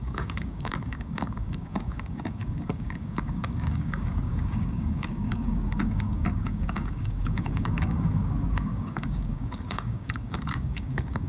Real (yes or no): no